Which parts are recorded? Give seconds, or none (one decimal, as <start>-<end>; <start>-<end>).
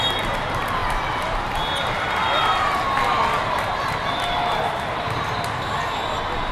0.0-6.5